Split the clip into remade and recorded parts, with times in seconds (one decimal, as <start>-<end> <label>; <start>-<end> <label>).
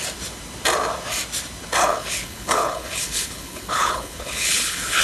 0.0-1.8 recorded; 1.8-5.0 remade